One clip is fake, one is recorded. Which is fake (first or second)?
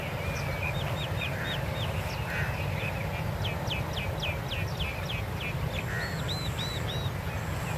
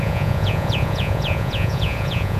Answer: second